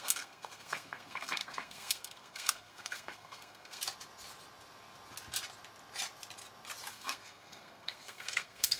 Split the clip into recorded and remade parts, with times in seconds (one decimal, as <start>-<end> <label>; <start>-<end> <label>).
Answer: 0.0-3.8 remade; 3.8-6.9 recorded; 6.9-8.8 remade